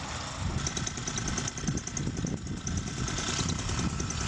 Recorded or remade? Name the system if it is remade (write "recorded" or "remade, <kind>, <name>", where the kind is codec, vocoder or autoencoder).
recorded